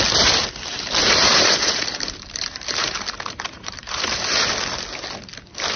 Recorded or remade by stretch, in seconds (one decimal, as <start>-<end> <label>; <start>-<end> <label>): 0.0-1.0 recorded; 1.0-4.5 remade; 4.5-5.8 recorded